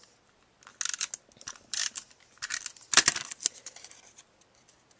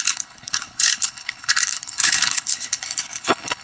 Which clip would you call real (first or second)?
first